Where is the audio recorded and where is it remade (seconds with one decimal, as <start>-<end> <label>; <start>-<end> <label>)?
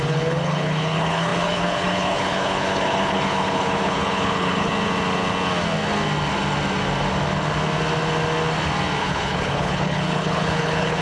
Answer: 0.0-4.7 remade; 4.7-9.0 recorded; 9.0-11.0 remade